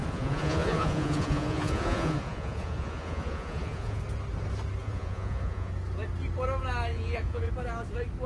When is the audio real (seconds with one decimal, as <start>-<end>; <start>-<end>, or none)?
4.0-4.8; 5.7-6.9; 7.5-8.3